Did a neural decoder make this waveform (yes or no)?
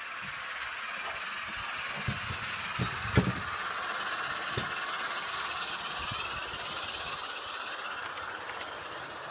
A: no